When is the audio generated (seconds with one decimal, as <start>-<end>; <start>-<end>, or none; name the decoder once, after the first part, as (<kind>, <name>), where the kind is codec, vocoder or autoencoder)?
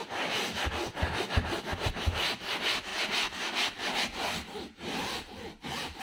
0.0-0.5 (vocoder, BigVGAN v2); 1.7-2.5; 2.9-6.0